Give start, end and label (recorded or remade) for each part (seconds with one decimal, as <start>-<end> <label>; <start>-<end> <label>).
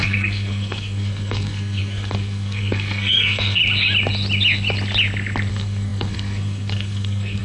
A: 0.0-3.6 remade; 3.6-5.5 recorded; 5.5-7.4 remade